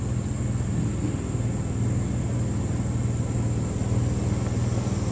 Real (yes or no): yes